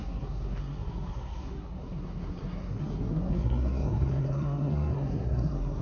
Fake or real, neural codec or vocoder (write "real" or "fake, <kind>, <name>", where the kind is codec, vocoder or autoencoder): fake, codec, SNAC